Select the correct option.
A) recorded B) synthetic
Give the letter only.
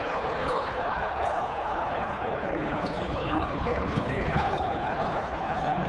B